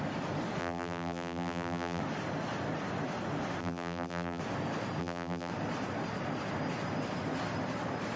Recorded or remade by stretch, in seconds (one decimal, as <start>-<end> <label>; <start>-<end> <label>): 0.0-0.6 recorded; 0.6-2.0 remade; 2.0-3.6 recorded; 3.6-4.4 remade; 4.4-5.0 recorded; 5.0-5.5 remade; 5.5-8.2 recorded